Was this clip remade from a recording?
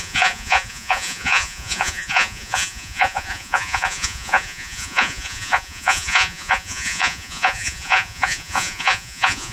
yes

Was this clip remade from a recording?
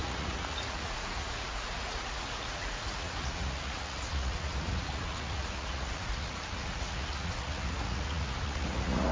yes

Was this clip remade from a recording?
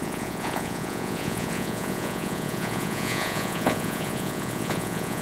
yes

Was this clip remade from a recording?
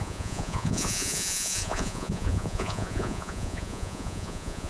yes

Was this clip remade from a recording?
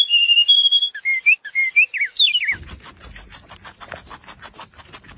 no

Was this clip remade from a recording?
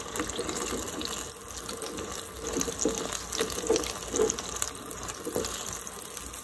no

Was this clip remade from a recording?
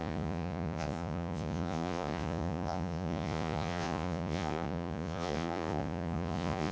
yes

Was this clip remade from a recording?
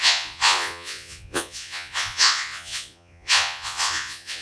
yes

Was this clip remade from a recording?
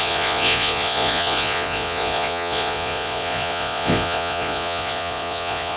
yes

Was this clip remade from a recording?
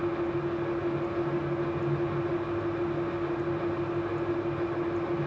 no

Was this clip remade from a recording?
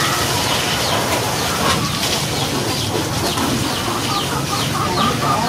no